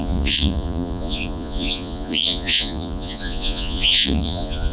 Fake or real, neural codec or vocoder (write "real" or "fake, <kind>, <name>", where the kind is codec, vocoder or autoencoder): fake, vocoder, Vocos